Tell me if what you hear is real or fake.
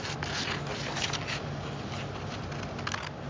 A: real